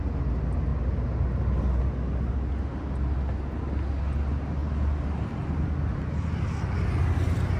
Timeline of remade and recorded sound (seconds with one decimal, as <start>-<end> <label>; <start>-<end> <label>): 0.0-7.6 recorded